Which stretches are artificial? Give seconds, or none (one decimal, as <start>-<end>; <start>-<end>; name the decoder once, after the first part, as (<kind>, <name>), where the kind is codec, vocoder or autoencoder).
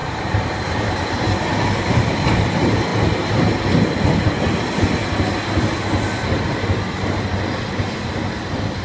0.0-2.4 (vocoder, BigVGAN v2)